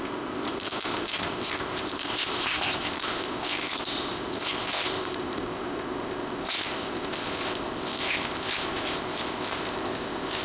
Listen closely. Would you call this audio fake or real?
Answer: fake